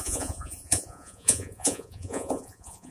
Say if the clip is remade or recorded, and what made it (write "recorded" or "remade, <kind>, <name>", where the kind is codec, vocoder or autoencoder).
remade, vocoder, Vocos